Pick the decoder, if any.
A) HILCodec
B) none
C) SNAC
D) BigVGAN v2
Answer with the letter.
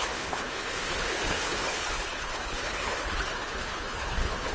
A